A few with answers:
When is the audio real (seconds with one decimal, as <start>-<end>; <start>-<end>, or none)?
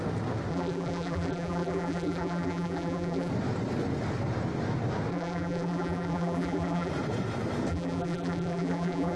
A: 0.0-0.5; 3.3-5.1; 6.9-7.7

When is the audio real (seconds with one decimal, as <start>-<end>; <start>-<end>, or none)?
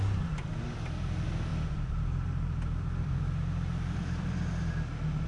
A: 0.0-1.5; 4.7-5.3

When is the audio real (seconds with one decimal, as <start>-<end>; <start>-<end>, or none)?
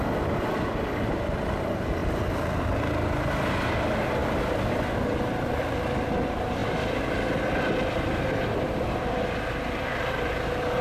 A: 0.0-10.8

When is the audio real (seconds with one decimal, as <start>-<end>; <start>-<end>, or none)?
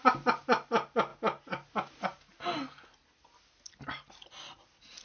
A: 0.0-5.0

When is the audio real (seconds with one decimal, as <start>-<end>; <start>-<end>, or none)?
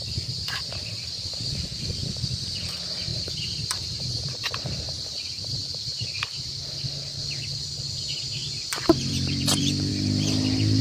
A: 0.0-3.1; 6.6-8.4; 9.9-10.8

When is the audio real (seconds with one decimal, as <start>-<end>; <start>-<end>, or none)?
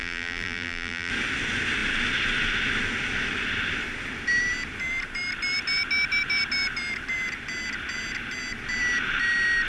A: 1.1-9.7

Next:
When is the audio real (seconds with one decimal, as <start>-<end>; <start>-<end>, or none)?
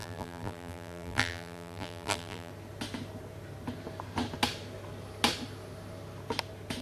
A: 2.5-6.8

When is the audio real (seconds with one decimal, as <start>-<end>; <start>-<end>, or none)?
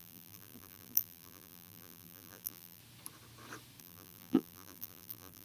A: 2.8-3.8